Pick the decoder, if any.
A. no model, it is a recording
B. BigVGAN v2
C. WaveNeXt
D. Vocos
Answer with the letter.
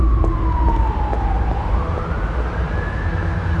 A